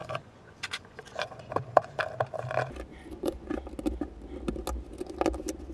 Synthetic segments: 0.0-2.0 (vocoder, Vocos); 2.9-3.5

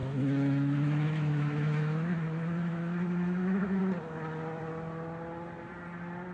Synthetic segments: 0.0-3.8 (autoencoder, DAC-VAE)

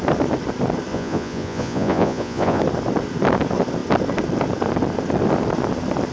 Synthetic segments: 0.9-2.6 (vocoder, Vocos)

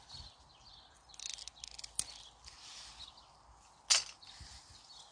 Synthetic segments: none

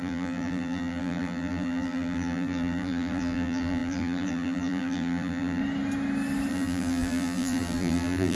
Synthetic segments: 0.0-5.6 (vocoder, BigVGAN v2); 6.5-8.3